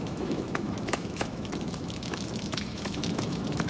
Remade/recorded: remade